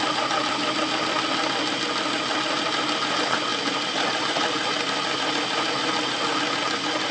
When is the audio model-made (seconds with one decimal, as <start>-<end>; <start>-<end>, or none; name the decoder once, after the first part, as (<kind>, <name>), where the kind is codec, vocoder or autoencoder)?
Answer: none